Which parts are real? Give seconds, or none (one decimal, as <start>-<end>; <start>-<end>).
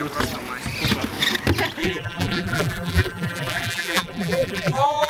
0.0-1.8